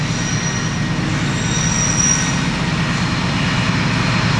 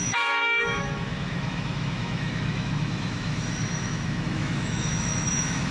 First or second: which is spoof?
second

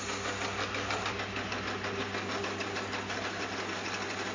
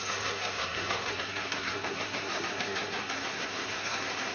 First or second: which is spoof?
second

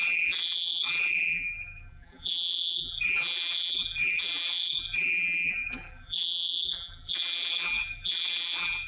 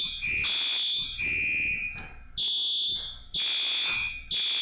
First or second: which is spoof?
first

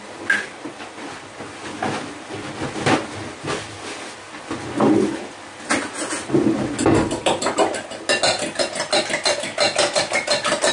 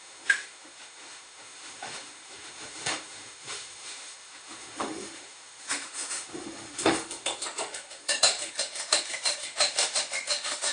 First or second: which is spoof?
second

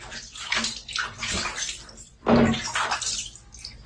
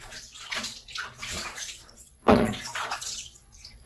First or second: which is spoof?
second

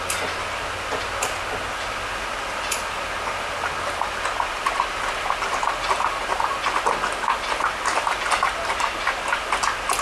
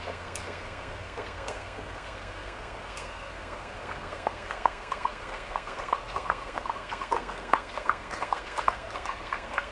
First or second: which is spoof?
second